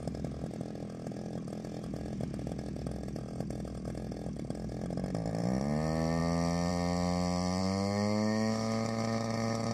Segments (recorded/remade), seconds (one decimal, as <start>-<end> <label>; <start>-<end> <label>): 0.0-7.6 recorded; 7.6-9.7 remade